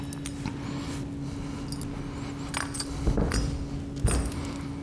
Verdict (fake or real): real